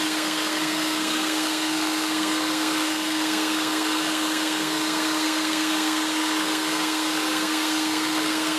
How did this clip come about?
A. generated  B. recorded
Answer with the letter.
A